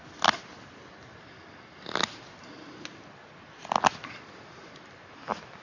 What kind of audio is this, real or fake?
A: real